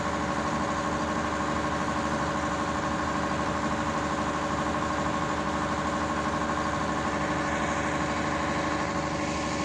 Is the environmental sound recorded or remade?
recorded